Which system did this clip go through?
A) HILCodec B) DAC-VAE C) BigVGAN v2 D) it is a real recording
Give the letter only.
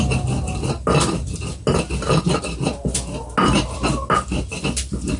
D